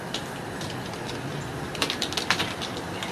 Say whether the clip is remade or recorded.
remade